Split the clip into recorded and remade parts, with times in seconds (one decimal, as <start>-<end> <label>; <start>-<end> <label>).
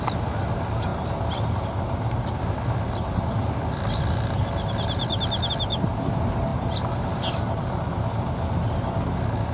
0.0-9.5 recorded